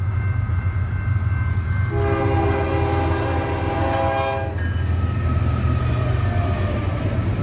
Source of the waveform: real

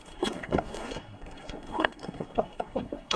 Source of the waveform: fake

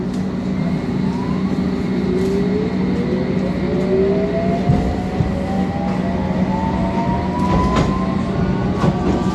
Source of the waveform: real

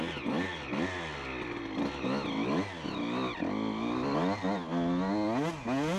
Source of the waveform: real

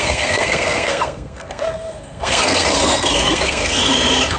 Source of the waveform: fake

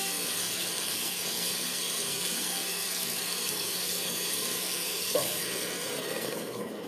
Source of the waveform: fake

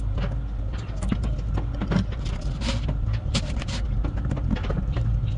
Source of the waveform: real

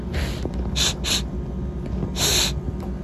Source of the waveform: real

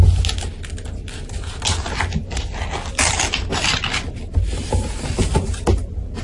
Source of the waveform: real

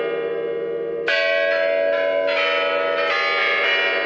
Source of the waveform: real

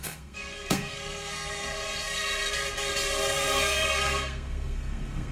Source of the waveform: fake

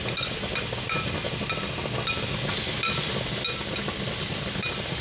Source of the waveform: real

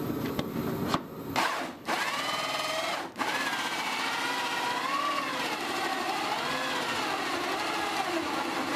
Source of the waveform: real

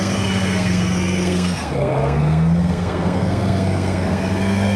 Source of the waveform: fake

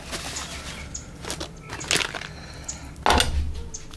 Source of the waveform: real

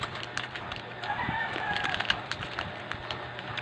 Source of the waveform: real